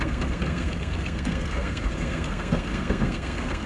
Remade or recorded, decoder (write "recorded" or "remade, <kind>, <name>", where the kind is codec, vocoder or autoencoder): remade, codec, SNAC